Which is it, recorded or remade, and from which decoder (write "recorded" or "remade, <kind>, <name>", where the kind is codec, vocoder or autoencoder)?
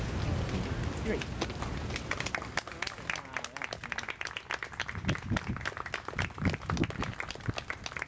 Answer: recorded